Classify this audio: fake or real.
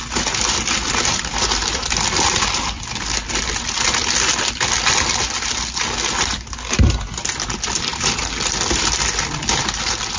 real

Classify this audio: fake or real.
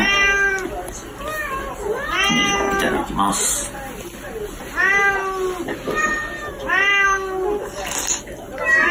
real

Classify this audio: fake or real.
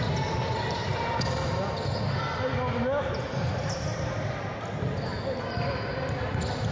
real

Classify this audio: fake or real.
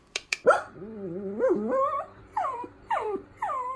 fake